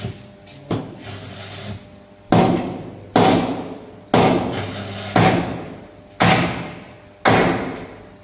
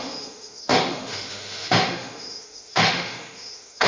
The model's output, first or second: second